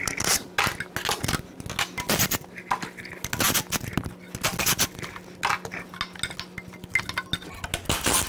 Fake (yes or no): no